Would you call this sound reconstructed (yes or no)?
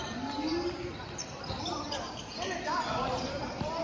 no